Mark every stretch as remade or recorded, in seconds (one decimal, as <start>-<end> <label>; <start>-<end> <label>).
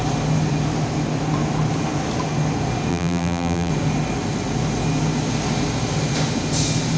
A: 0.0-2.9 recorded; 2.9-3.7 remade; 3.7-7.0 recorded